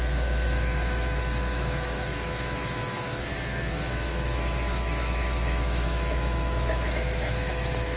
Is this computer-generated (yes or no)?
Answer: yes